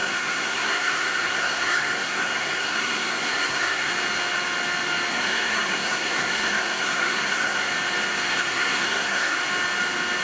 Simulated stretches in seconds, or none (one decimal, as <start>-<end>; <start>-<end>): 0.0-3.9; 5.1-7.7; 8.3-9.4